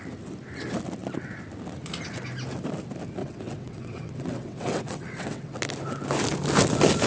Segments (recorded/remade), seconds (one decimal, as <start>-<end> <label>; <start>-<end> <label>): 0.0-3.2 recorded; 3.2-5.6 remade; 5.6-7.1 recorded